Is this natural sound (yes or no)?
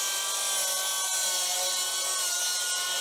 yes